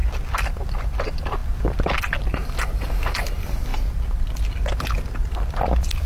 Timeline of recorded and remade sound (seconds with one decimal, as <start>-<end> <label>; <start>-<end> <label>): 0.0-6.1 recorded